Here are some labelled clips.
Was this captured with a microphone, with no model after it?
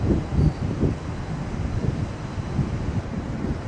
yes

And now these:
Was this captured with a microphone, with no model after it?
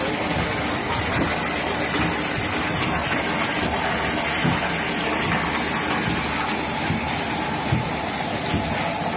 yes